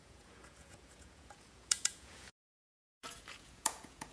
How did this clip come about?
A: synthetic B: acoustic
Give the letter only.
A